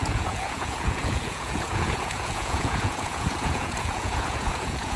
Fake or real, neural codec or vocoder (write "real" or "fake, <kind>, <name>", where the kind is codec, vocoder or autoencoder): fake, vocoder, Vocos